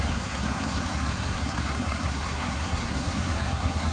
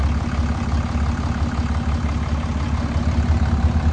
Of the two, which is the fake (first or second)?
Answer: first